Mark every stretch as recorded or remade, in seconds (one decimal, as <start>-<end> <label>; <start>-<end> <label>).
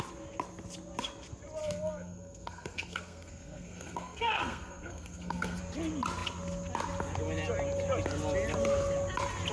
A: 0.0-1.6 recorded; 1.6-5.6 remade; 5.6-9.5 recorded